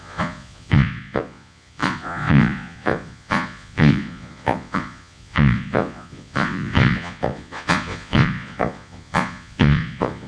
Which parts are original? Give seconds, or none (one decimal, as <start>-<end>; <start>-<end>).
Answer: none